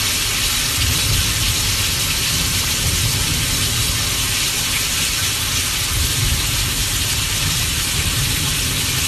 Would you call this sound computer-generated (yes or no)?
no